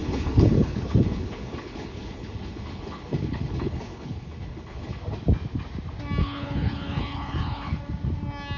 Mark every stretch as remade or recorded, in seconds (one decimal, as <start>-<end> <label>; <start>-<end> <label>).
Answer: 0.0-5.0 remade; 5.0-6.2 recorded; 6.2-7.8 remade; 7.8-8.6 recorded